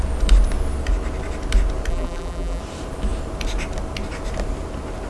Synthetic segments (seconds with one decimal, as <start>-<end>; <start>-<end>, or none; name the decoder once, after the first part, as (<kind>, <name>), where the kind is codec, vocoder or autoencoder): 1.9-2.6 (vocoder, BigVGAN v2)